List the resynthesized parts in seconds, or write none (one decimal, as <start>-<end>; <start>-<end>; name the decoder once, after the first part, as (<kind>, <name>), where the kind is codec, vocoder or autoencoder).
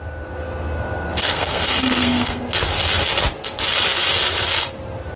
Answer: 1.2-2.4 (codec, SNAC)